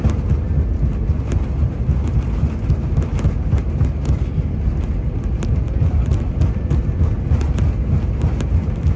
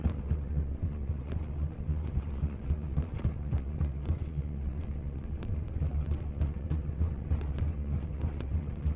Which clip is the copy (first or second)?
second